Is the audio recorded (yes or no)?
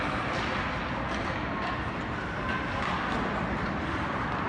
yes